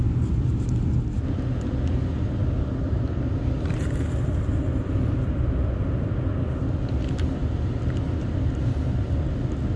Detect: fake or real real